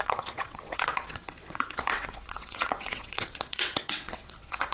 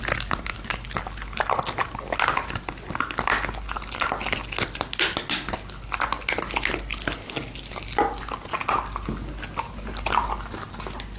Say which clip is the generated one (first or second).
first